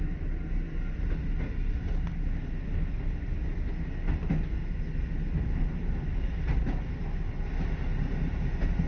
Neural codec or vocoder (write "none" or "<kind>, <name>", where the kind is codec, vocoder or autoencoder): none